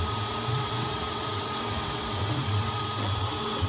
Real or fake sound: fake